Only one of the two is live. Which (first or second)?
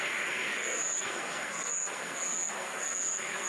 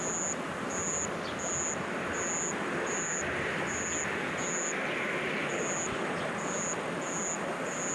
second